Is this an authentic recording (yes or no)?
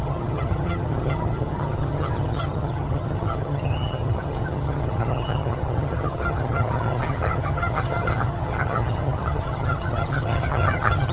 no